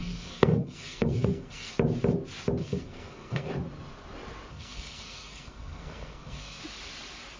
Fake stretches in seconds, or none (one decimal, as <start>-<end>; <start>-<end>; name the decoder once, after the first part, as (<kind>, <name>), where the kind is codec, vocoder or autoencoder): 0.0-1.7 (codec, SNAC); 2.6-3.5; 4.5-6.6

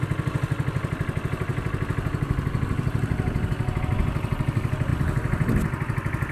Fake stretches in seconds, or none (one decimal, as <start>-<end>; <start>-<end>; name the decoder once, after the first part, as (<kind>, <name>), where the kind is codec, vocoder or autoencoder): none

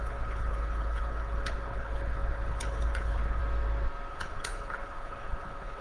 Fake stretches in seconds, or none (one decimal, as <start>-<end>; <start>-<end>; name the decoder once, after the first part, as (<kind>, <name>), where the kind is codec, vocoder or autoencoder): 0.0-3.4 (codec, HILCodec); 4.1-5.8

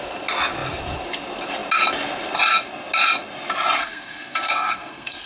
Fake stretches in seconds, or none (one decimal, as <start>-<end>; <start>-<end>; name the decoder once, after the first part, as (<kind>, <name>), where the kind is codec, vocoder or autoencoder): 3.8-5.3 (codec, SNAC)

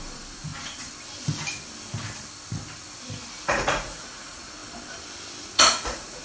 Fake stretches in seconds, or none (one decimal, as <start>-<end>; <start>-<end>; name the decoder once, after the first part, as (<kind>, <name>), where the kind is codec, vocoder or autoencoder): 0.0-0.5 (vocoder, Vocos); 3.3-4.6; 5.4-6.2

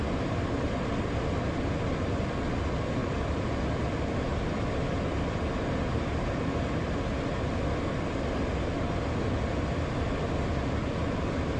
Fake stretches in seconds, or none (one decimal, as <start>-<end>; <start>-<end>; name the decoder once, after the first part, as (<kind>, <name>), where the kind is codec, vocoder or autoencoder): none

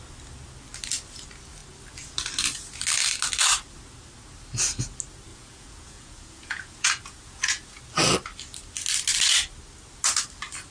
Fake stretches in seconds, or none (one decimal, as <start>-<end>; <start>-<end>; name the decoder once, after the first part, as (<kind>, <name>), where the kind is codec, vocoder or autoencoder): 5.3-7.8 (vocoder, Vocos)